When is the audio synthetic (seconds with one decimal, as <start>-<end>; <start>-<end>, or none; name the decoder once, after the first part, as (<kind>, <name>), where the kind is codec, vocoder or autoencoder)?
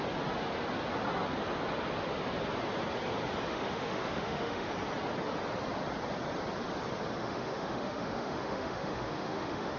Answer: 3.5-4.7 (autoencoder, DAC-VAE); 7.2-9.8